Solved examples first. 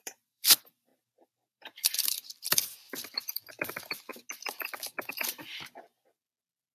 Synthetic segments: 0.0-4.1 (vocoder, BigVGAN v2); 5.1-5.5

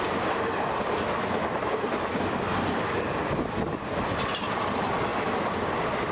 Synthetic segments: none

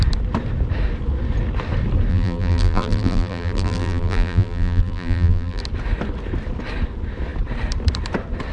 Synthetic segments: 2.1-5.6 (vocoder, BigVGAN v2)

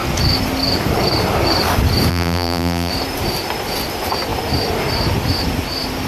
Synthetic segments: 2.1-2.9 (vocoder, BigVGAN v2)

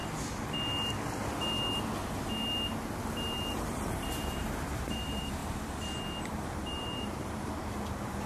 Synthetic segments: 3.5-5.4 (vocoder, BigVGAN v2); 6.3-8.3